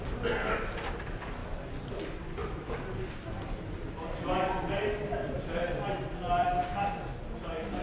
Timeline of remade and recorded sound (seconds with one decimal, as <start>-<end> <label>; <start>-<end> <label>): 0.0-2.4 recorded; 2.4-6.6 remade; 6.6-7.8 recorded